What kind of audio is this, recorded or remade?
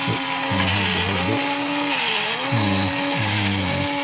recorded